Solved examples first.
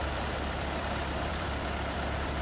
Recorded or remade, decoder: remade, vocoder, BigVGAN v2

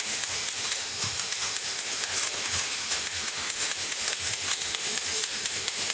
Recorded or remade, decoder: remade, autoencoder, DAC-VAE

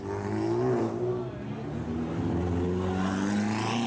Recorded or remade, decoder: recorded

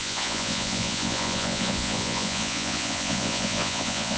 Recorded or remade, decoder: remade, vocoder, Vocos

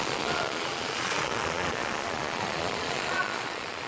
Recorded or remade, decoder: remade, vocoder, Vocos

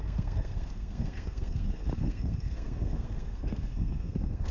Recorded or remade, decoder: remade, codec, SNAC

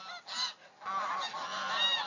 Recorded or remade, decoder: recorded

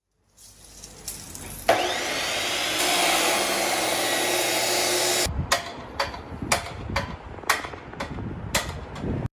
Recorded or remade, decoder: recorded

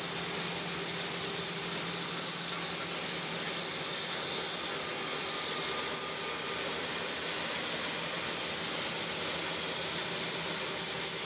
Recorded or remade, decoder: recorded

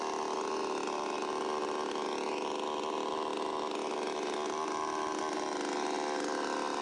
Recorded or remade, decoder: recorded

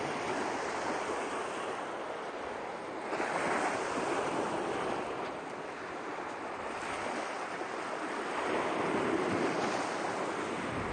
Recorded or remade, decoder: recorded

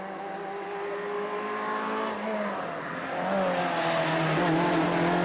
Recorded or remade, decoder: recorded